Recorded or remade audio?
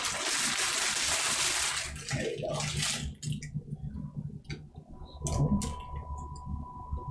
recorded